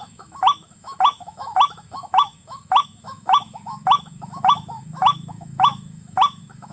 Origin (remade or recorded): remade